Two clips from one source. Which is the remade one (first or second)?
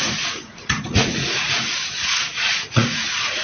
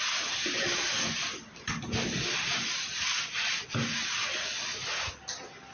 first